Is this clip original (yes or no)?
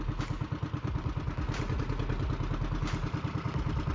yes